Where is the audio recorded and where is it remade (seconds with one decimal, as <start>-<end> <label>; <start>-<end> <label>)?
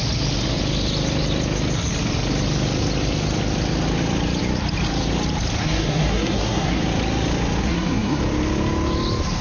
0.0-5.6 recorded; 5.6-6.8 remade; 6.8-7.6 recorded; 7.6-8.2 remade; 8.2-9.4 recorded